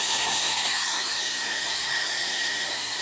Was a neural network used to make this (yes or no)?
yes